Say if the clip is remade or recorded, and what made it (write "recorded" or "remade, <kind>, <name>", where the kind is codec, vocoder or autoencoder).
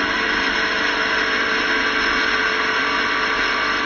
recorded